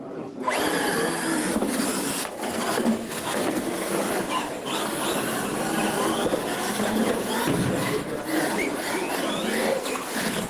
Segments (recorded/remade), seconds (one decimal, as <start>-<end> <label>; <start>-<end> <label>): 0.0-2.2 recorded; 2.2-4.0 remade; 4.0-9.5 recorded; 9.5-10.5 remade